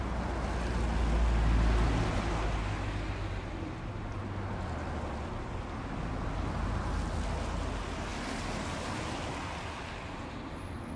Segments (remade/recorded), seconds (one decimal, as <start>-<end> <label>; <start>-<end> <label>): 0.0-11.0 recorded